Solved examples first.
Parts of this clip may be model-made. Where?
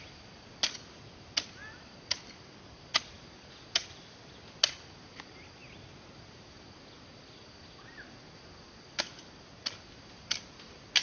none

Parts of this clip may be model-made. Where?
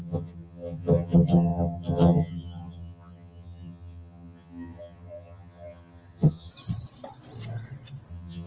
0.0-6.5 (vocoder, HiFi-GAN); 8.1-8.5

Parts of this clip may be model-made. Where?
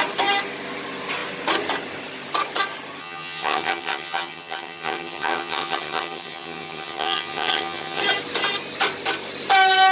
3.0-8.0 (vocoder, HiFi-GAN)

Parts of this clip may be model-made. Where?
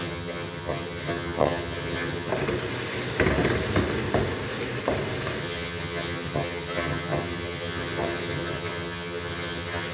0.0-2.3 (vocoder, HiFi-GAN); 5.4-9.9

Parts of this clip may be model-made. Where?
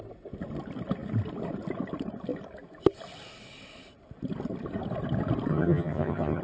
5.5-6.4 (vocoder, HiFi-GAN)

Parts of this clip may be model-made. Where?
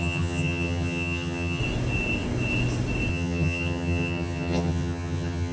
0.0-1.6 (vocoder, HiFi-GAN); 3.1-5.5